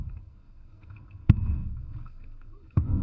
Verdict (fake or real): fake